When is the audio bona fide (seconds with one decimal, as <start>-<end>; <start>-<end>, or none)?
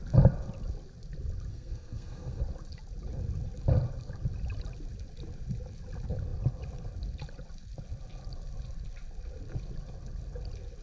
0.0-1.5; 2.4-10.8